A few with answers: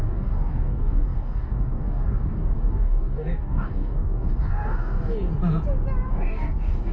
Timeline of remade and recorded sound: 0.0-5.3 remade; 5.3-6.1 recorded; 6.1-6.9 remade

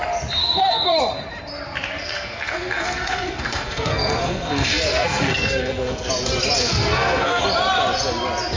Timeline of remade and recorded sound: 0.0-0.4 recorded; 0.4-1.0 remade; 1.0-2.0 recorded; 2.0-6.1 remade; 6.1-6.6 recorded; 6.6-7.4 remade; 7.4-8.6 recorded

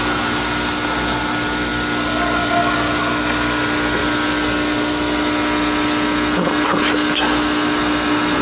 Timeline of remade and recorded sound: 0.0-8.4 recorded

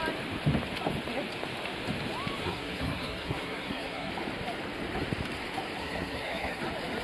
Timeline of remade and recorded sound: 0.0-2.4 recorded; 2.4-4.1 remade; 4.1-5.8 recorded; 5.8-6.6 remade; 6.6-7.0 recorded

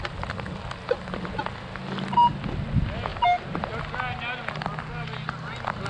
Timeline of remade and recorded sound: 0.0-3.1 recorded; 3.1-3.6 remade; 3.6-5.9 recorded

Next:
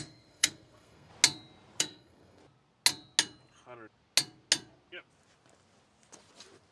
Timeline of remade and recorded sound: 0.0-1.1 remade; 1.1-1.8 recorded; 1.8-2.4 remade; 2.4-6.7 recorded

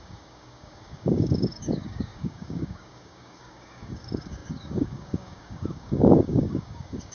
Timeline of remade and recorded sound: 0.0-7.1 remade

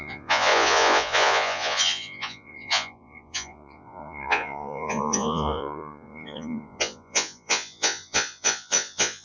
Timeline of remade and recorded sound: 0.0-9.2 remade